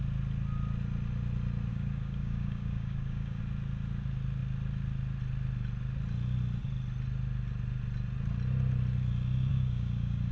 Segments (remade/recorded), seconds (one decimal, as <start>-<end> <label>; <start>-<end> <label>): 0.0-1.7 recorded; 1.7-3.4 remade; 3.4-9.5 recorded; 9.5-10.3 remade